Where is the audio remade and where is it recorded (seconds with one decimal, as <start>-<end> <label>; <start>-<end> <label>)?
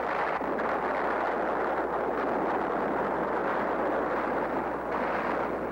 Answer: 0.0-5.7 recorded